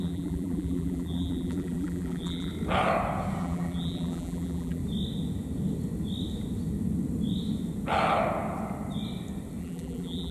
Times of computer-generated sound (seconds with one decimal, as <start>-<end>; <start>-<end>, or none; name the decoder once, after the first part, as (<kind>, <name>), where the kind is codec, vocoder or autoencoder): 0.0-2.5 (vocoder, BigVGAN v2); 3.4-4.8; 9.6-10.3